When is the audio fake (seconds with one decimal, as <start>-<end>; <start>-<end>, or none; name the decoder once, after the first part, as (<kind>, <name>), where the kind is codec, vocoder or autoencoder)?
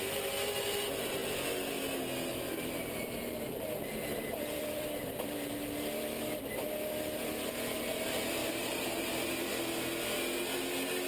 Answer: 2.3-5.5 (vocoder, BigVGAN v2); 8.4-9.5